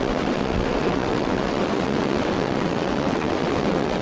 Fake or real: fake